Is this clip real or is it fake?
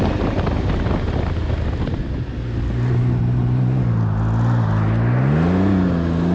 real